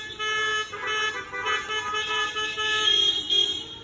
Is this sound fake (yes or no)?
yes